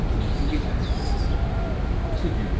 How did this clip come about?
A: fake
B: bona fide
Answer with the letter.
B